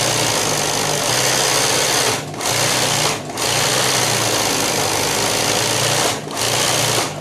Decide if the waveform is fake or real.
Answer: real